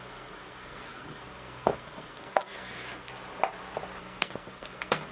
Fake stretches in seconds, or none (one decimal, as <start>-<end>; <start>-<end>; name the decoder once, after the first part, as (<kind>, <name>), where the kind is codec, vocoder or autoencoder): 0.0-3.1 (codec, SNAC); 4.0-5.1